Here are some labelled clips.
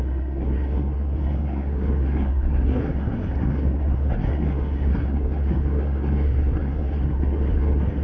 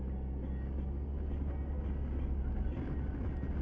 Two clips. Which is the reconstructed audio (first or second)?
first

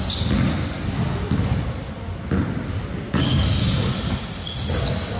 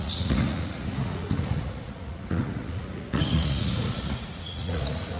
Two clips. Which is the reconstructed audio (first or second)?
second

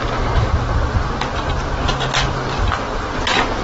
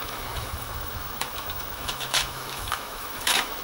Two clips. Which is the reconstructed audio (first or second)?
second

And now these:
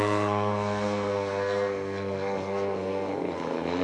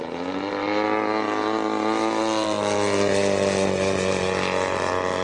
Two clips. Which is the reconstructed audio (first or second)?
first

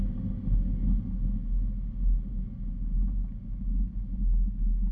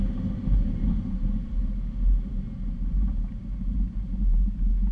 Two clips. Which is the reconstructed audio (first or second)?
second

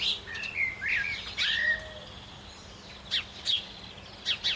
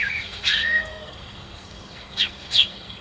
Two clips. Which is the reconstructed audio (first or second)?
second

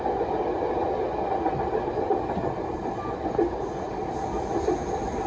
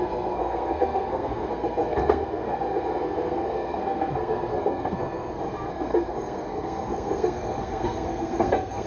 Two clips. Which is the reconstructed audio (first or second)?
second